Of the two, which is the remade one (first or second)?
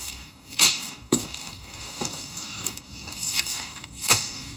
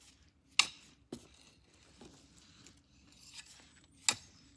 first